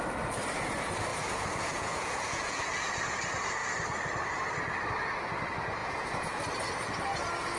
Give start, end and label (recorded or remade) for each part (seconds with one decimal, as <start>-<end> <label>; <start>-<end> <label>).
0.0-1.1 recorded; 1.1-2.6 remade; 2.6-5.8 recorded; 5.8-6.4 remade; 6.4-7.6 recorded